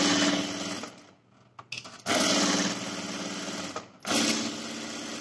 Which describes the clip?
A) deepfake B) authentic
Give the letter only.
B